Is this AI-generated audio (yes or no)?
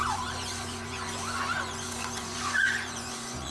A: yes